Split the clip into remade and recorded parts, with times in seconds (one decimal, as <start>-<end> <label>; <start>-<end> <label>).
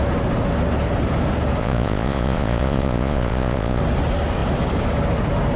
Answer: 0.0-1.6 recorded; 1.6-3.8 remade; 3.8-5.6 recorded